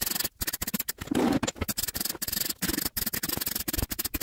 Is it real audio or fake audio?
real